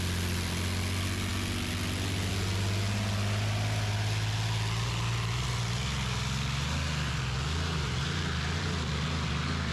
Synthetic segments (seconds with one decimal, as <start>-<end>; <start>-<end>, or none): none